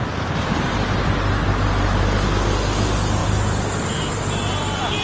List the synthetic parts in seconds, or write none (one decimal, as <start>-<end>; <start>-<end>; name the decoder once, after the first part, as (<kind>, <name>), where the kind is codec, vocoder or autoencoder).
none